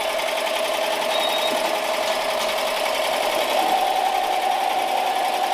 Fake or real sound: real